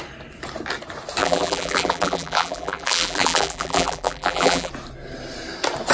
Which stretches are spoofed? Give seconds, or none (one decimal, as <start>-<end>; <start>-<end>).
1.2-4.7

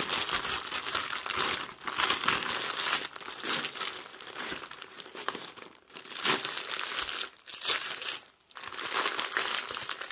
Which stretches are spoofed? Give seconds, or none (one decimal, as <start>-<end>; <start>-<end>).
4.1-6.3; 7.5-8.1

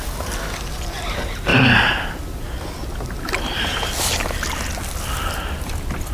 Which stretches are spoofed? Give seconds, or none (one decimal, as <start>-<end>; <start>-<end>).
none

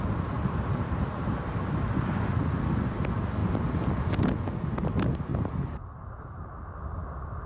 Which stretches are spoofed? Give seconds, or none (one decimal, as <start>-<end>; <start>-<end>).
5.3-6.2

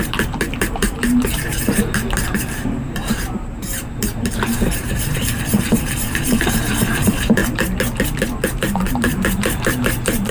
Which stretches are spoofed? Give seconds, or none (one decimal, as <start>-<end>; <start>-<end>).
0.0-7.4; 8.6-10.3

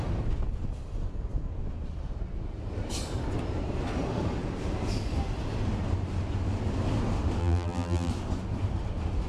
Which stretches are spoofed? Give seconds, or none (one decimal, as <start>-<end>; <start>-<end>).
7.4-8.1